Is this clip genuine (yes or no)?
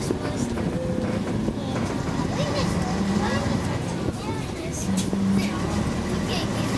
yes